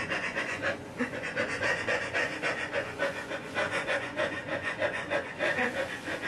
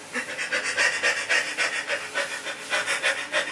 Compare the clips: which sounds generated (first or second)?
first